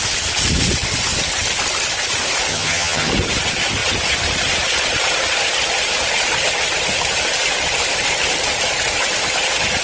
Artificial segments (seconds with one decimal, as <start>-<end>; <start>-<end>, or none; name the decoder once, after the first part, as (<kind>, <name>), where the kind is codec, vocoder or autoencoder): 2.5-3.1 (vocoder, HiFi-GAN)